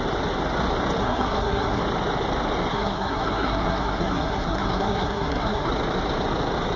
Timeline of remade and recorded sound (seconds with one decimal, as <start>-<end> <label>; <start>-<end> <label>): 0.0-1.0 recorded; 1.0-1.8 remade; 1.8-2.7 recorded; 2.7-5.7 remade; 5.7-6.8 recorded